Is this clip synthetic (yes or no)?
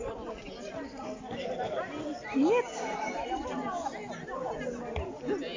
no